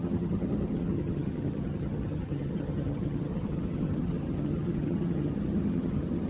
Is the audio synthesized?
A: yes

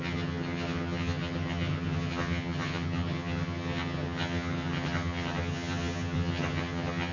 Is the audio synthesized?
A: yes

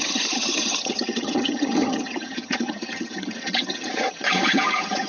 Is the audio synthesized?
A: yes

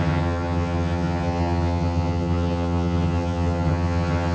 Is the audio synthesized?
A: yes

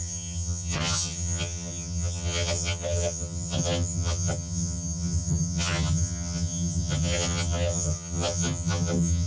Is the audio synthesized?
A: yes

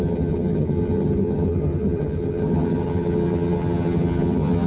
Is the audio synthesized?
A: yes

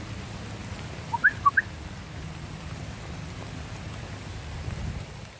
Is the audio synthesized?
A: no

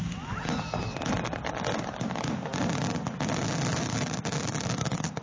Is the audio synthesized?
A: no